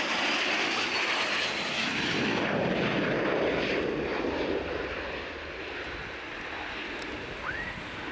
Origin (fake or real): real